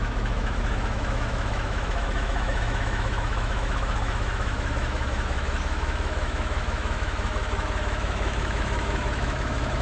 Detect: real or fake fake